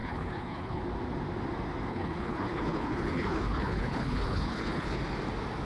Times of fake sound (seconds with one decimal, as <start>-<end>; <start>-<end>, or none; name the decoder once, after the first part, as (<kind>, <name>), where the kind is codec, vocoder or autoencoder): 0.0-0.8 (codec, HILCodec); 1.9-5.0